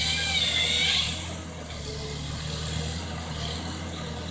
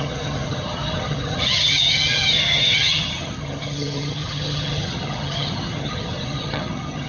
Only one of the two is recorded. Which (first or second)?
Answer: first